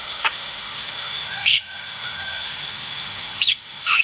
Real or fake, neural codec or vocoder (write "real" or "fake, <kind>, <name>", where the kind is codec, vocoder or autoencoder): fake, autoencoder, DAC-VAE